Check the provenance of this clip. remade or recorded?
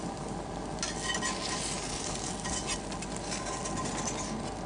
recorded